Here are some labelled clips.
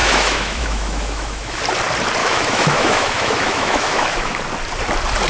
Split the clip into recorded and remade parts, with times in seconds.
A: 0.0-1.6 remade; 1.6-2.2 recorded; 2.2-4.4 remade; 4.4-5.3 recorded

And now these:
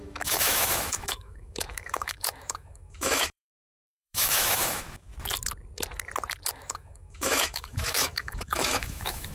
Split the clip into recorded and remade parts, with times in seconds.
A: 0.0-5.1 remade; 5.1-6.5 recorded; 6.5-9.3 remade

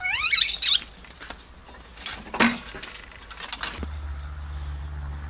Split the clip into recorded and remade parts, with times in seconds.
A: 0.0-5.3 recorded

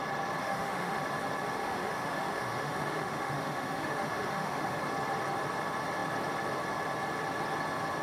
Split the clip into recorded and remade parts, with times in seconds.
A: 0.0-0.4 recorded; 0.4-1.0 remade; 1.0-1.6 recorded; 1.6-4.8 remade; 4.8-8.0 recorded

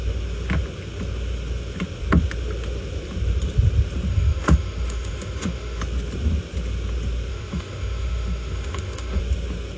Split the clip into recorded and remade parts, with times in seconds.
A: 0.0-4.1 recorded; 4.1-5.8 remade; 5.8-7.3 recorded; 7.3-9.2 remade; 9.2-9.8 recorded

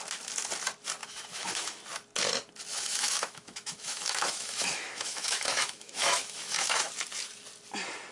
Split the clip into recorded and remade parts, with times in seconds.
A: 0.0-1.0 recorded; 1.0-1.8 remade; 1.8-2.7 recorded; 2.7-6.9 remade; 6.9-8.1 recorded

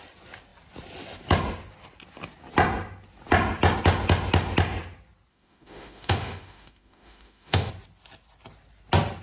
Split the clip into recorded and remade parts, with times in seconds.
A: 0.0-5.3 recorded; 5.3-7.7 remade; 7.7-9.2 recorded

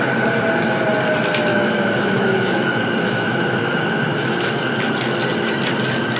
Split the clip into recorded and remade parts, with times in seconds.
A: 0.0-1.5 recorded; 1.5-4.7 remade; 4.7-6.2 recorded